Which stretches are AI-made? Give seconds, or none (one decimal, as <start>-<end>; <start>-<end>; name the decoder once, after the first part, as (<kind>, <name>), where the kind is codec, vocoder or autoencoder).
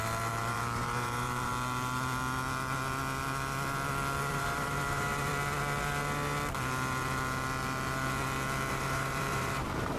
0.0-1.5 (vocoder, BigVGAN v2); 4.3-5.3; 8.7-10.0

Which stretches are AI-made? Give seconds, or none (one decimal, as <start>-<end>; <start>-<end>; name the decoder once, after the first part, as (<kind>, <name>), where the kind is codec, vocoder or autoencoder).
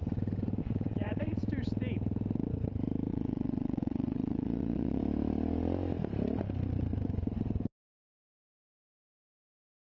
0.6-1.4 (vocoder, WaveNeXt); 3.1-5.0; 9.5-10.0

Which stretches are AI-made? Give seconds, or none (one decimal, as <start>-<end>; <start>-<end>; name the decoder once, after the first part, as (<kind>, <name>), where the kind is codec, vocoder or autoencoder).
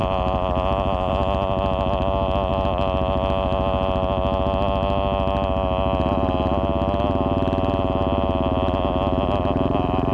none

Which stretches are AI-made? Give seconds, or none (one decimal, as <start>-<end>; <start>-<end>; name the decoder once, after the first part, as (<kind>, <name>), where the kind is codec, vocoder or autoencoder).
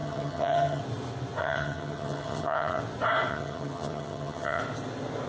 0.0-0.8 (vocoder, HiFi-GAN); 1.4-2.8; 3.3-4.6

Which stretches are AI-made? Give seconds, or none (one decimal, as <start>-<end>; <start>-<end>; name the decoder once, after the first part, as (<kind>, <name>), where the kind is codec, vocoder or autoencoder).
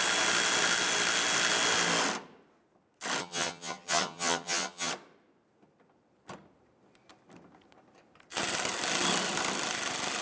3.2-4.9 (vocoder, HiFi-GAN)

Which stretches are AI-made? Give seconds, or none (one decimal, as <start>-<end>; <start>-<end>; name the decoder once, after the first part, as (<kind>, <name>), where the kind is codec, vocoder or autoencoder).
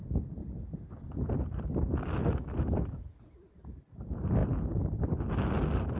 2.2-3.2 (autoencoder, DAC-VAE)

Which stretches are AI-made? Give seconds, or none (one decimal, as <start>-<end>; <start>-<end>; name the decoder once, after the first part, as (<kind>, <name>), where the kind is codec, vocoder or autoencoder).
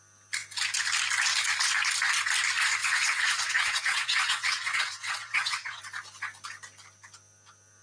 2.8-5.8 (vocoder, WaveNeXt)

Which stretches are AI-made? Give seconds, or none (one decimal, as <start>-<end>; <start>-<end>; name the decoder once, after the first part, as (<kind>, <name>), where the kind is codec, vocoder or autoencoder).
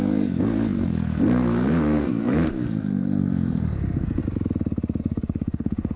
0.0-4.2 (codec, SNAC); 5.0-6.0